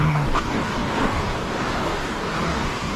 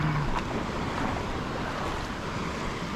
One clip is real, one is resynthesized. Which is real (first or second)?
second